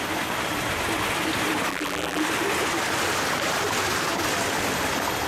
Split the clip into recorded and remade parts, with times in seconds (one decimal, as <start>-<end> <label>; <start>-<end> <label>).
0.0-1.7 recorded; 1.7-2.2 remade; 2.2-5.3 recorded